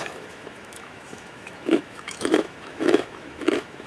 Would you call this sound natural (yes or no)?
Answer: no